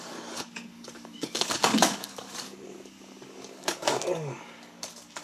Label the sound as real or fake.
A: fake